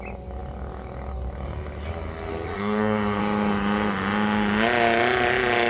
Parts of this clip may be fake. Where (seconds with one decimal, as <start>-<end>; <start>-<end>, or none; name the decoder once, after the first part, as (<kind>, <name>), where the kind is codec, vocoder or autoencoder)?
2.3-3.2 (codec, SNAC)